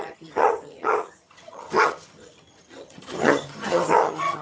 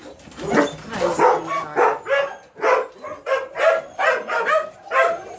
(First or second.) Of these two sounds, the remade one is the first